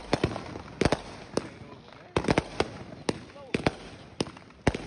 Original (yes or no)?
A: yes